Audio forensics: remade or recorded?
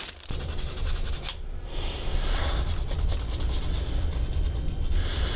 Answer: recorded